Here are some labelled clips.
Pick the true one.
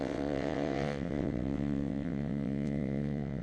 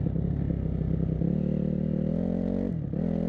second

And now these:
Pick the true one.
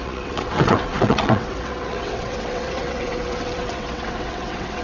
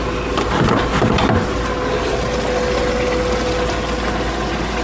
second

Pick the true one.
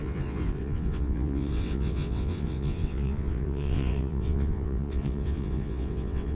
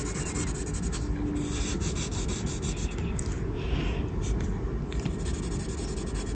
second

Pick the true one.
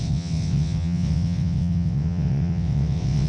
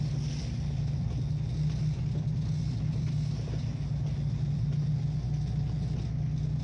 second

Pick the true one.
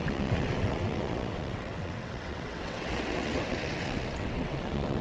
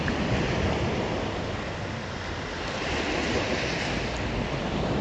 second